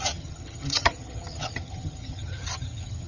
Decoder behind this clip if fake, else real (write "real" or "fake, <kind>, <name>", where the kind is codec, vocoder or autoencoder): fake, vocoder, HiFi-GAN